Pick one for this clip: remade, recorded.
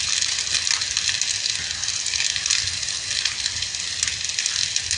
recorded